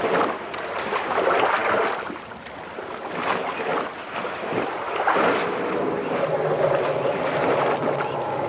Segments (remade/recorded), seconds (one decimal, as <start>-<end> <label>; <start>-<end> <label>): 0.0-3.7 recorded; 3.7-5.2 remade; 5.2-8.5 recorded